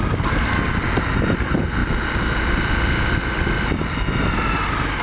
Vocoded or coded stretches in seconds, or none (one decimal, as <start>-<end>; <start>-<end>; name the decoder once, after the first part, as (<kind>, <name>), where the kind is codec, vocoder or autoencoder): none